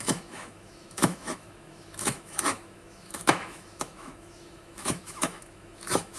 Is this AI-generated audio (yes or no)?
yes